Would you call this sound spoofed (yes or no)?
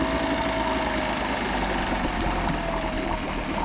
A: no